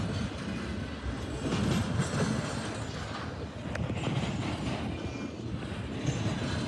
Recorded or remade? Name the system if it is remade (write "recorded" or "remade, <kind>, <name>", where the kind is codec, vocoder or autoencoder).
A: recorded